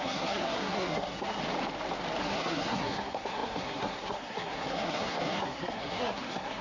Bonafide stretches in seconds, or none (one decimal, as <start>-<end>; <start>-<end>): 1.4-2.2